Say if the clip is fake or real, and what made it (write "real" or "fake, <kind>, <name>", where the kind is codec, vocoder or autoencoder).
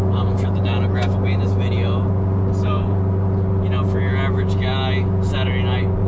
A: real